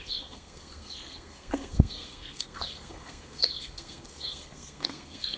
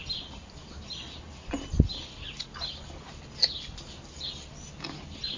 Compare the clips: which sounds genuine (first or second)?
second